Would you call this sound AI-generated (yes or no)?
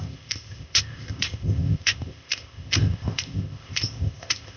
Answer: yes